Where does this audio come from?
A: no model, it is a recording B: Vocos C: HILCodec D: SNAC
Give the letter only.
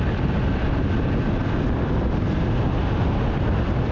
A